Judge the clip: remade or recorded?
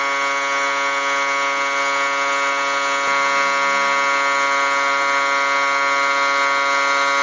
recorded